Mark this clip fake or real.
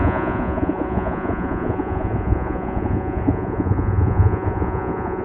fake